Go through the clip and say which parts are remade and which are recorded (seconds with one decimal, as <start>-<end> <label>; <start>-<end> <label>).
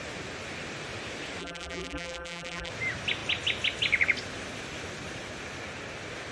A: 0.0-1.4 recorded; 1.4-2.7 remade; 2.7-6.3 recorded